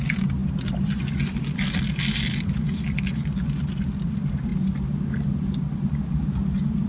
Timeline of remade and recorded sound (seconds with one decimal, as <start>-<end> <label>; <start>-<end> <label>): 0.0-6.9 recorded